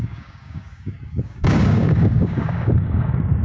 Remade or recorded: remade